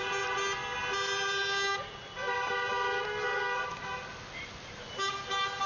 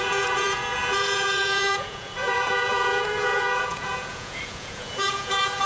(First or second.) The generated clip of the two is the second